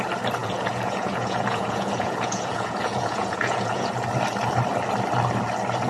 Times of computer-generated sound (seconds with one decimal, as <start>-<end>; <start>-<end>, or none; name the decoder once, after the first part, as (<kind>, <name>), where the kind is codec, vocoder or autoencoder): 0.4-3.9 (vocoder, Vocos)